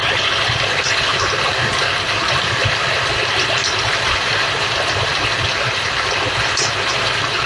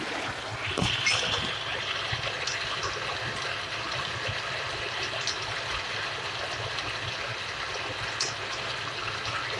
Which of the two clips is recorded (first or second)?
second